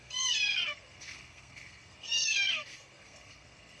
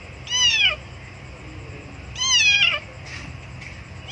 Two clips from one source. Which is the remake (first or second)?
first